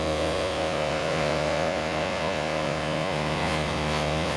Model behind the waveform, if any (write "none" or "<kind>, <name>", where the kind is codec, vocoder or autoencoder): vocoder, Vocos